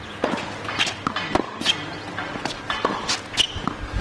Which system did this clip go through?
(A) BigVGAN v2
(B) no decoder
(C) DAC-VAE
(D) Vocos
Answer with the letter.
B